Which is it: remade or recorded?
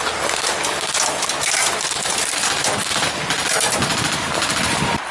remade